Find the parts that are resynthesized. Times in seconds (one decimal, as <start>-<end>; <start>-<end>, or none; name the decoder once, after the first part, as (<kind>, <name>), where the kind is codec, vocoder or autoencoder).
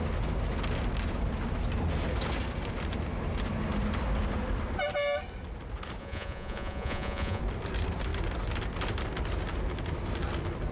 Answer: 6.0-7.4 (vocoder, Vocos)